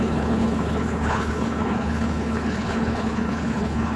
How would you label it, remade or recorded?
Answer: remade